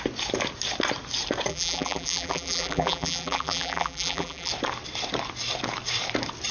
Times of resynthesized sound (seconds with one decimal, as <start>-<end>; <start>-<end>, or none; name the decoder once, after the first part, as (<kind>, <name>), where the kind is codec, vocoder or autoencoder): 1.5-4.5 (vocoder, BigVGAN v2)